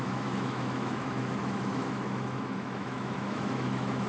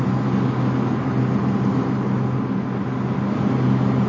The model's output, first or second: first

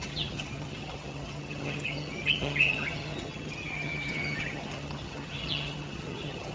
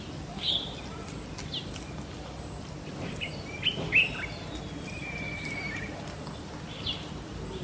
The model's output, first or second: first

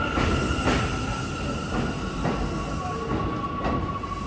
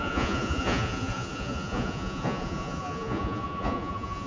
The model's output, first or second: second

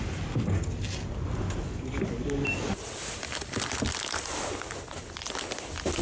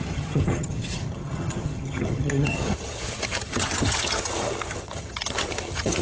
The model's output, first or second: second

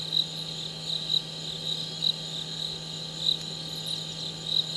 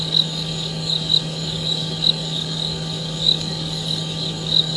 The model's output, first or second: second